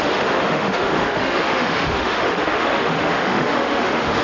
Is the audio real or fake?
fake